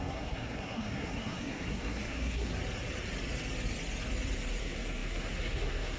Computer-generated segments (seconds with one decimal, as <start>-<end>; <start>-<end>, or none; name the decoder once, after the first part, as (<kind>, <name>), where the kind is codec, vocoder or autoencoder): 0.0-2.5 (codec, SNAC); 4.6-6.0

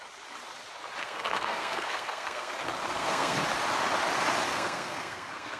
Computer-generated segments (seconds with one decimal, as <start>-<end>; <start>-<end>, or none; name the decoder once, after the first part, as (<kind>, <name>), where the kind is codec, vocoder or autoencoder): 1.0-2.5 (codec, SNAC); 2.9-3.4; 4.5-5.6

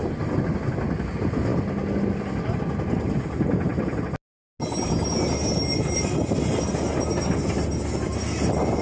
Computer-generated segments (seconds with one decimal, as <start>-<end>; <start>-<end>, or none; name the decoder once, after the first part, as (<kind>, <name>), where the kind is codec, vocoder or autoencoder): none

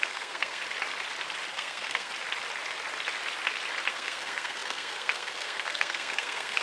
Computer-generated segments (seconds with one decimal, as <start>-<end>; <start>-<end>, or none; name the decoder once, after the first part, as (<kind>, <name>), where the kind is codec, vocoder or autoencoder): 0.0-0.6 (codec, SNAC); 1.5-2.1; 3.9-6.6

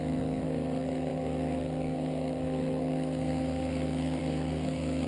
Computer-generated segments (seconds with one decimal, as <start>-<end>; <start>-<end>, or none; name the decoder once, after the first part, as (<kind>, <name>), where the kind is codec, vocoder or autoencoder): 0.0-5.1 (codec, SNAC)